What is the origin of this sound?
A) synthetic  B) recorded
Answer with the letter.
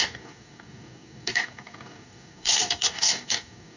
A